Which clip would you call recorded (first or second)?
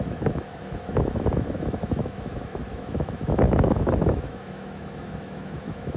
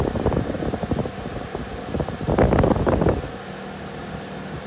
second